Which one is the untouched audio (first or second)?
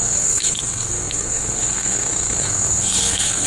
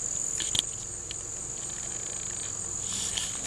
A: second